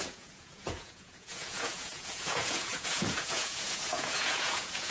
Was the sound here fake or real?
fake